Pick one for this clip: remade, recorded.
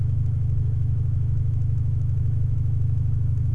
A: remade